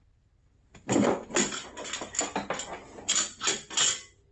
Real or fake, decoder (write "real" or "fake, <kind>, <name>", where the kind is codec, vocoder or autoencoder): real